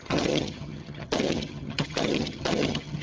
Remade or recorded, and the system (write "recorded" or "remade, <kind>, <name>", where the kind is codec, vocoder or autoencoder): remade, vocoder, HiFi-GAN